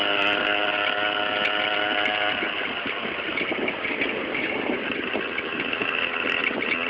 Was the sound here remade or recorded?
recorded